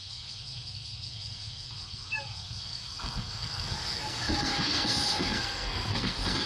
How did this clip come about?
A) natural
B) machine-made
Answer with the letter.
B